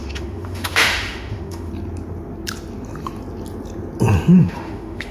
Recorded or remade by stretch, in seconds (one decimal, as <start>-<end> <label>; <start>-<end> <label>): 0.0-1.7 remade; 1.7-4.4 recorded; 4.4-5.1 remade